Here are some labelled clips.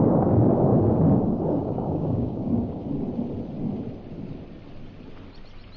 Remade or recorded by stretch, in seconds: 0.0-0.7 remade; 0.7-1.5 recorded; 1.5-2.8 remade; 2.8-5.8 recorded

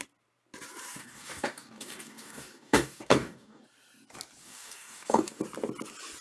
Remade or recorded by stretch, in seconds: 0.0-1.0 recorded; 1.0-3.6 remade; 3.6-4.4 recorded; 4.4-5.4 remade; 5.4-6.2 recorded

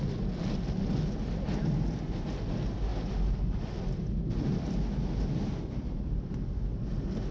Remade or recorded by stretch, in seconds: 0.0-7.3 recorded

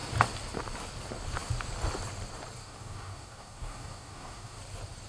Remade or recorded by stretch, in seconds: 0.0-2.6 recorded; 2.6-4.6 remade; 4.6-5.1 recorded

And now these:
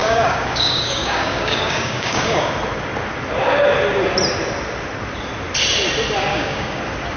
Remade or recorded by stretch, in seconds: 0.0-2.5 remade; 2.5-6.3 recorded; 6.3-6.8 remade; 6.8-7.2 recorded

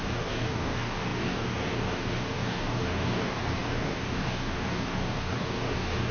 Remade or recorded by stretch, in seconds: 0.0-6.1 remade

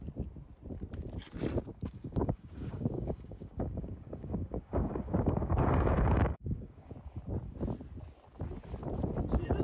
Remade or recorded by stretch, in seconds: 0.0-1.7 recorded; 1.7-6.9 remade; 6.9-9.6 recorded

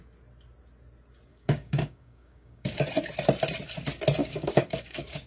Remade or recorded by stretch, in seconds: 0.0-1.3 recorded; 1.3-2.8 remade; 2.8-4.2 recorded; 4.2-5.3 remade